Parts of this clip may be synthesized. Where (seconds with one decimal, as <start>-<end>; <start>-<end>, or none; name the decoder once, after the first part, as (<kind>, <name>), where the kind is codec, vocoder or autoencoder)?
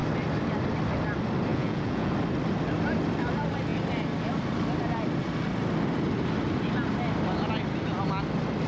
1.5-2.1 (vocoder, Vocos)